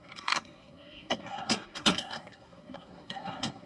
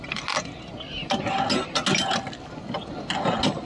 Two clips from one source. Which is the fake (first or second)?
first